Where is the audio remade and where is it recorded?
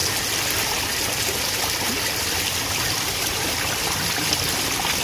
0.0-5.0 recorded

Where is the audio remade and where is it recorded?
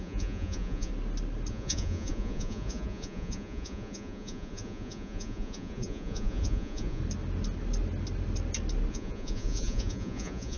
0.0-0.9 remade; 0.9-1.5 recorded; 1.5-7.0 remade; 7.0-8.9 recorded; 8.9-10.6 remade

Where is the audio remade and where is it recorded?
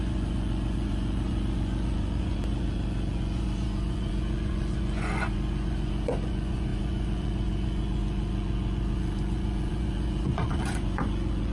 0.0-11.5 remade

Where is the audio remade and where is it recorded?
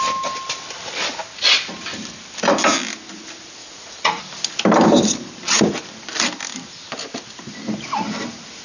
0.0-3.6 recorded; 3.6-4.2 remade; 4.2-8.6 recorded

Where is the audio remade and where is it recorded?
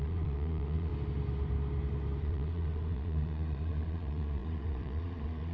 0.0-0.9 remade; 0.9-2.2 recorded; 2.2-5.5 remade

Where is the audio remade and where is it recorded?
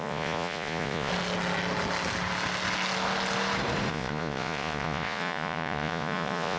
0.0-1.1 remade; 1.1-3.9 recorded; 3.9-6.6 remade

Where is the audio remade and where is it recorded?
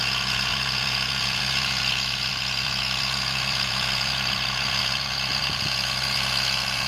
0.0-6.9 remade